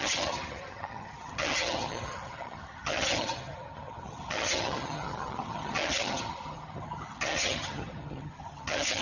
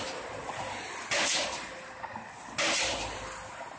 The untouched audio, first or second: second